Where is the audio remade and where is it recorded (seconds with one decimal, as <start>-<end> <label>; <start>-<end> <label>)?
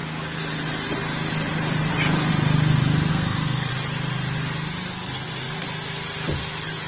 0.0-3.1 recorded; 3.1-3.7 remade; 3.7-6.9 recorded